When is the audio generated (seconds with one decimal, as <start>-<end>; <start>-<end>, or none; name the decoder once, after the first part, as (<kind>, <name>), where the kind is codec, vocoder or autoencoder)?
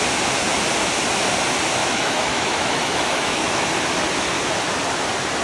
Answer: 1.8-3.7 (autoencoder, DAC-VAE)